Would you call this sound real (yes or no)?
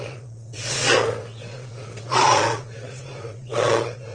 no